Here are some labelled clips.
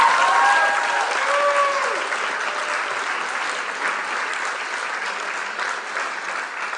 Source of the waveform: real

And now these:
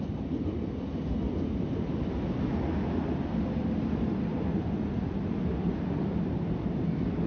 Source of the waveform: real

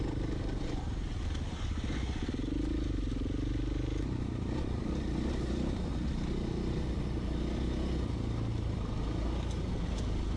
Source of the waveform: real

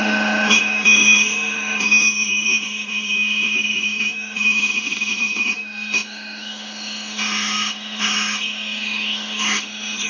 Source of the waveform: fake